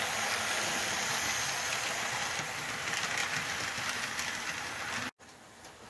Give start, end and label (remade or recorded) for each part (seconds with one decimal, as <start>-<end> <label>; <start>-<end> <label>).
0.0-5.9 recorded